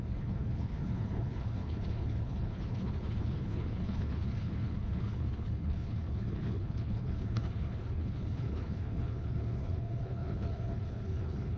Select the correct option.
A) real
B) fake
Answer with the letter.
B